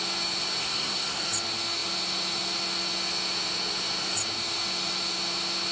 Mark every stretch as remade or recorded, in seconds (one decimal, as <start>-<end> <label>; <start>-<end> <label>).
0.0-0.6 recorded; 0.6-1.2 remade; 1.2-5.7 recorded